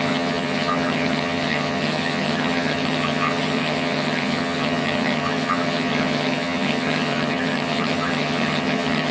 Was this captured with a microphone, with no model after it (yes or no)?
no